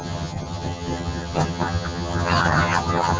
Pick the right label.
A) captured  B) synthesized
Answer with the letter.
B